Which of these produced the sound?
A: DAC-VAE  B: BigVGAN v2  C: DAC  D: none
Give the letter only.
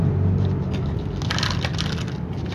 D